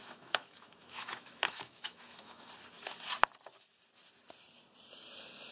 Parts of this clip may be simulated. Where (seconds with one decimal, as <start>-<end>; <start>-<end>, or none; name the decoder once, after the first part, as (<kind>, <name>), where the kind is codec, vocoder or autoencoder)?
0.0-2.5 (autoencoder, DAC-VAE)